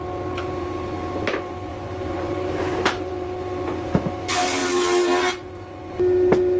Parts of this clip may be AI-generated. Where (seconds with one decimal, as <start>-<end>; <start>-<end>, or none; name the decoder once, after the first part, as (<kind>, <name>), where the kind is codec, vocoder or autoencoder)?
1.7-3.1 (vocoder, BigVGAN v2)